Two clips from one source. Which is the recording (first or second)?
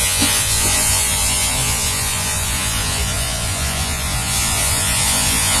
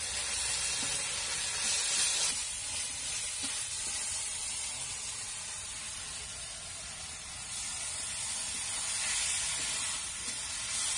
second